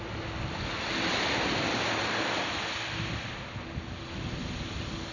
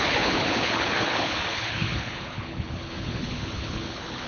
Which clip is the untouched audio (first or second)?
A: first